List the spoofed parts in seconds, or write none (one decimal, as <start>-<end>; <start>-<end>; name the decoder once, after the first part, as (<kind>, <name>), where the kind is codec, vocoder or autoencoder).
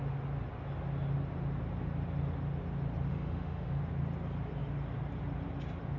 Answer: 3.1-3.8 (autoencoder, DAC-VAE)